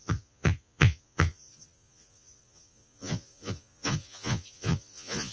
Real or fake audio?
fake